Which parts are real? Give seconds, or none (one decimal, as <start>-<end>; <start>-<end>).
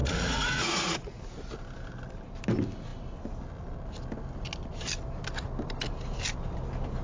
1.2-7.0